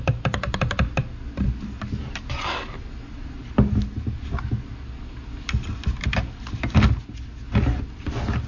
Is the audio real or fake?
real